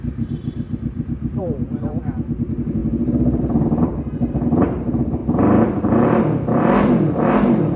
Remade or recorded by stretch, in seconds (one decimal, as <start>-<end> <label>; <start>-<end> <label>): 0.0-7.8 remade